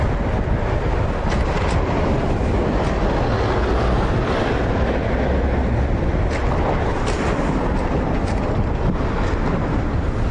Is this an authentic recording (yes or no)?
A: yes